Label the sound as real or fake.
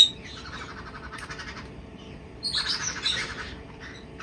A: fake